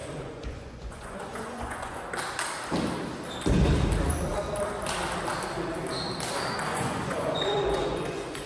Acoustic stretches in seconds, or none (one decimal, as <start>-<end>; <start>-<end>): 2.0-6.7